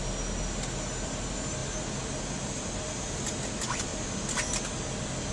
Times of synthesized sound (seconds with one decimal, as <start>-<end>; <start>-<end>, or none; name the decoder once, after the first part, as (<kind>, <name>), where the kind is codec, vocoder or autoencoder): none